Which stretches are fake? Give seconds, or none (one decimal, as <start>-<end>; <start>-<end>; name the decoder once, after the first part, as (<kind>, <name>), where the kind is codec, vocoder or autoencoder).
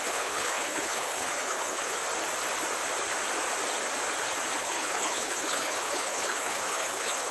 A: 0.0-2.0 (codec, HILCodec); 4.6-7.3